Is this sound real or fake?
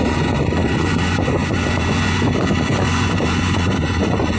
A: fake